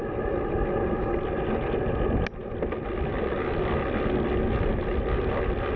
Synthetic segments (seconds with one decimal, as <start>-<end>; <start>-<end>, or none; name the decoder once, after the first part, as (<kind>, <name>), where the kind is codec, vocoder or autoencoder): none